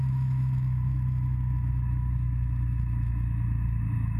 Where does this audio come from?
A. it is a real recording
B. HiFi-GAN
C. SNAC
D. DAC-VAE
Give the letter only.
D